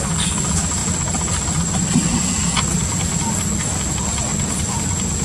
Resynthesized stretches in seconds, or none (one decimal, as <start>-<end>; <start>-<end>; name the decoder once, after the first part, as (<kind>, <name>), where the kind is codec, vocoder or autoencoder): none